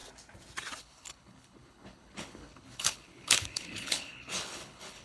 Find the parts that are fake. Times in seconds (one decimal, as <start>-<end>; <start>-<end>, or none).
0.8-5.0